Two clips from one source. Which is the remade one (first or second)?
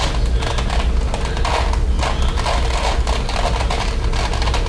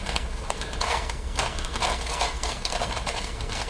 second